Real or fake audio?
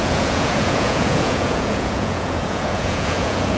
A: fake